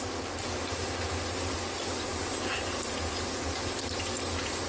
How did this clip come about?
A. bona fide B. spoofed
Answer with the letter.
A